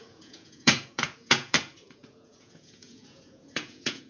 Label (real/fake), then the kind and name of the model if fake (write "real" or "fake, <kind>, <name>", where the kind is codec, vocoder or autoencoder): fake, vocoder, Vocos